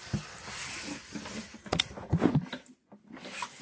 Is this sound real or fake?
real